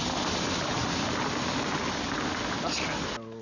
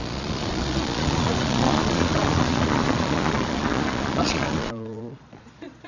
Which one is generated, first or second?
second